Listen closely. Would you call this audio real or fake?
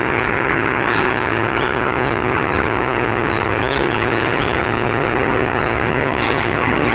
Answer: fake